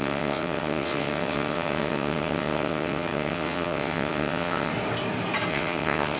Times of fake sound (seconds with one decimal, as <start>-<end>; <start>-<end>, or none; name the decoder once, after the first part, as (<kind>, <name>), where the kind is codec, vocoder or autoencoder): 0.0-4.7 (vocoder, WaveNeXt); 5.5-6.2